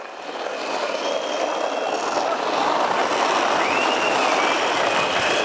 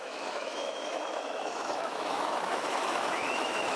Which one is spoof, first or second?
second